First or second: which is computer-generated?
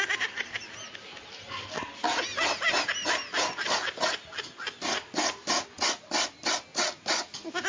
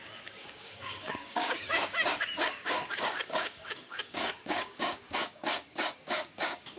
second